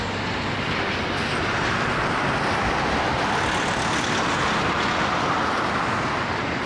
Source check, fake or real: real